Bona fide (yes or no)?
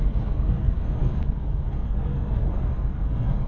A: no